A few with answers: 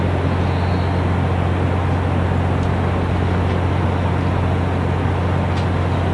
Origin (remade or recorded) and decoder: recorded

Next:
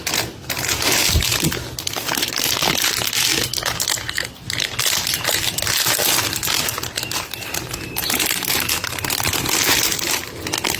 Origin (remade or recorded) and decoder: recorded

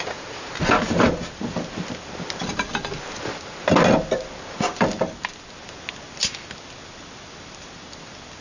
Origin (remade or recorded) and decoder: recorded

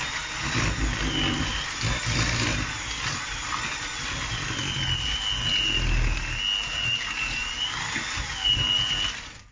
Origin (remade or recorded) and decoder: recorded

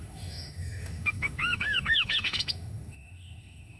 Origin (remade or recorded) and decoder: remade, autoencoder, DAC-VAE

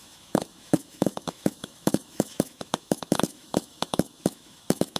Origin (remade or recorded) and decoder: remade, autoencoder, DAC-VAE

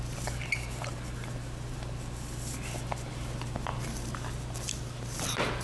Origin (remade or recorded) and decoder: recorded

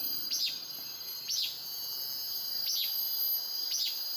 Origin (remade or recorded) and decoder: recorded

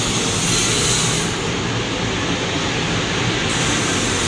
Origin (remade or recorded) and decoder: recorded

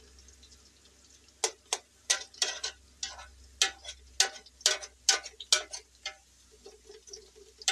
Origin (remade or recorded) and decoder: recorded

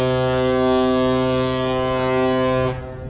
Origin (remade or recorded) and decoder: recorded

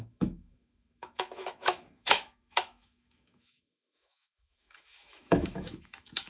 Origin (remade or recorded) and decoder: remade, autoencoder, DAC-VAE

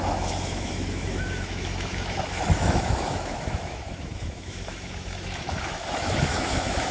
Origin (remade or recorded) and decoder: remade, autoencoder, DAC-VAE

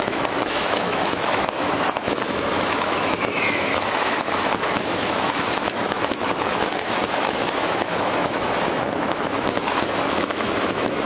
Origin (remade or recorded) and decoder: remade, autoencoder, DAC-VAE